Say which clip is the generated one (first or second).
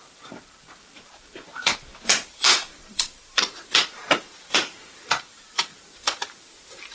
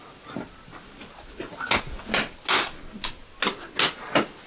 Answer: first